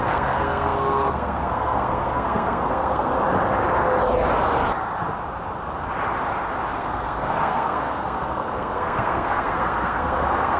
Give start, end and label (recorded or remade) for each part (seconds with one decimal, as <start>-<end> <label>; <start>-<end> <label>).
0.0-3.1 remade; 3.1-6.8 recorded; 6.8-10.6 remade